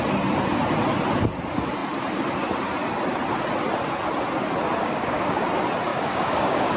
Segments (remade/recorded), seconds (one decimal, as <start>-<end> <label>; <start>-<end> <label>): 0.0-4.8 recorded; 4.8-5.4 remade; 5.4-5.9 recorded; 5.9-6.8 remade